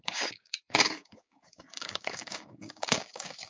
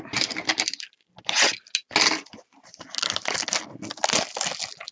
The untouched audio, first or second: second